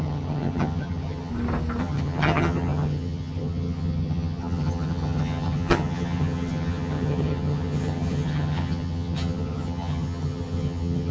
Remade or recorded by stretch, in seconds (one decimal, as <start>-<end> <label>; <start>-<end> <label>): 0.0-1.3 remade; 1.3-1.8 recorded; 1.8-11.1 remade